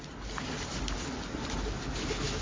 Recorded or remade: recorded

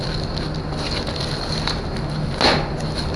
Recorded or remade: recorded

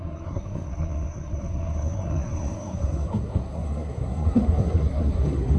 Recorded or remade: remade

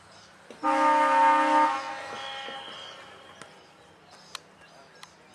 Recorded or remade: recorded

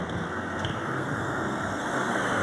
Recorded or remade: remade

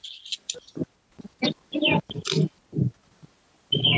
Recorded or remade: recorded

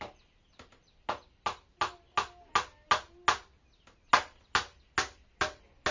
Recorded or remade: recorded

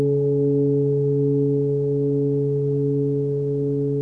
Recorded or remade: recorded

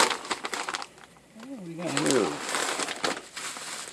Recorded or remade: recorded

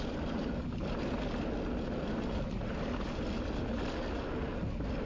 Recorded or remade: recorded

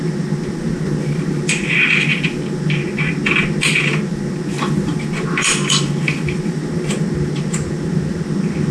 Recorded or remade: recorded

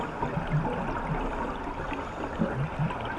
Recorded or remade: recorded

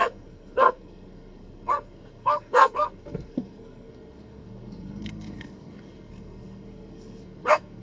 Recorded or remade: remade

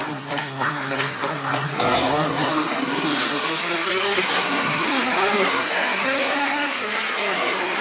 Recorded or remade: remade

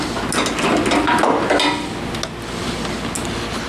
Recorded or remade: recorded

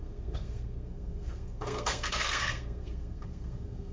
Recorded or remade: remade